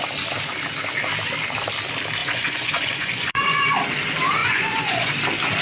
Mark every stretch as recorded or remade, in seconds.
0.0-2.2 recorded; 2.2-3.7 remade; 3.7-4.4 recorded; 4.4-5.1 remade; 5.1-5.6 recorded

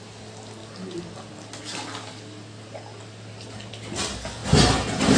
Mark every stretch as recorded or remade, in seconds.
0.0-5.2 recorded

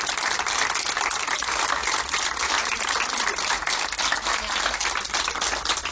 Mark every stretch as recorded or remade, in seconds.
0.0-5.9 recorded

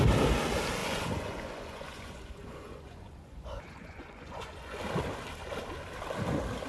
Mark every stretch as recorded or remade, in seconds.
0.0-0.8 recorded; 0.8-4.8 remade; 4.8-6.7 recorded

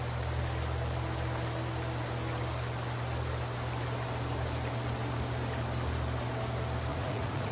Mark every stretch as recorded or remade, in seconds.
0.0-6.9 recorded; 6.9-7.5 remade

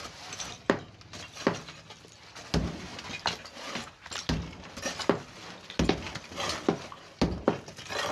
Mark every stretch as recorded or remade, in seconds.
0.0-8.1 recorded

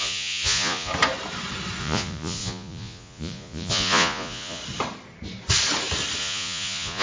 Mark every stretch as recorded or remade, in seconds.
0.0-0.9 remade; 0.9-1.8 recorded; 1.8-4.6 remade; 4.6-6.2 recorded; 6.2-7.0 remade